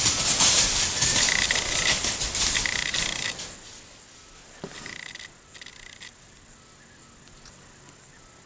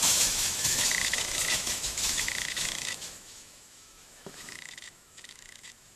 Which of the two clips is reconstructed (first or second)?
second